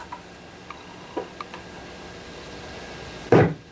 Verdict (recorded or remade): recorded